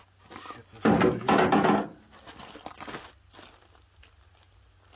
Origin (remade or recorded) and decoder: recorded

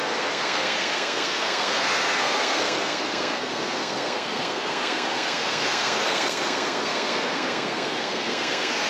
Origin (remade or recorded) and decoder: remade, codec, SNAC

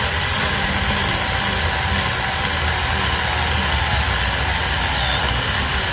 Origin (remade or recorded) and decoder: recorded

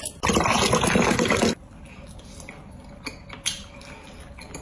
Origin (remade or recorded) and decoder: recorded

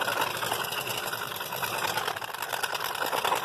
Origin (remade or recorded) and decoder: recorded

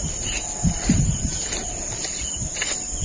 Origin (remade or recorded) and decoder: recorded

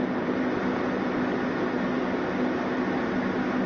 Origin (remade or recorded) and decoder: recorded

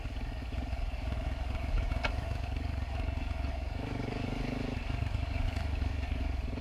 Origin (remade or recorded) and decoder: remade, codec, DAC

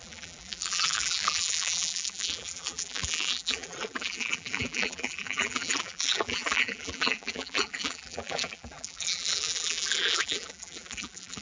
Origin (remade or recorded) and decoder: remade, vocoder, BigVGAN v2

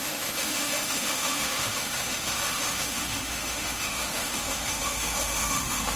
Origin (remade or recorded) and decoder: remade, autoencoder, DAC-VAE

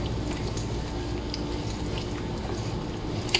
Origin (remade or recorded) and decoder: recorded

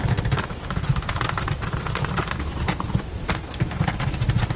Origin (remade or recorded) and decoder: recorded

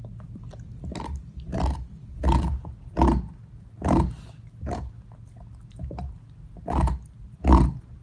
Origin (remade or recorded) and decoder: recorded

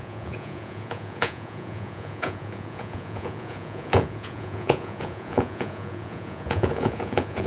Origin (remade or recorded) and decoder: remade, vocoder, Vocos